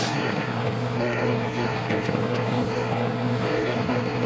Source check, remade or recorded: remade